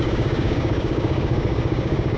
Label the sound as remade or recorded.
remade